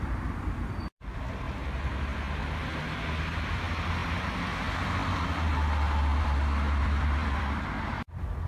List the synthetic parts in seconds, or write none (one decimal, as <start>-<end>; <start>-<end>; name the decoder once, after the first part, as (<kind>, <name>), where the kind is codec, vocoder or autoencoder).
0.0-1.6 (vocoder, BigVGAN v2); 6.2-8.5